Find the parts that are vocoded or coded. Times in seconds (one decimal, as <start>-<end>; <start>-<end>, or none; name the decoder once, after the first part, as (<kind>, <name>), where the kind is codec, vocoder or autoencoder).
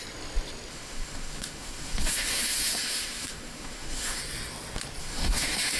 0.7-4.2 (autoencoder, DAC-VAE); 5.0-5.8